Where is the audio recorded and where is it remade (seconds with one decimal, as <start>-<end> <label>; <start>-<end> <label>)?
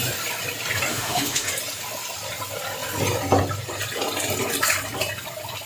0.0-0.9 recorded; 0.9-1.5 remade; 1.5-5.7 recorded